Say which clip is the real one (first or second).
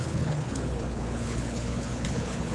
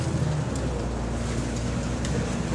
second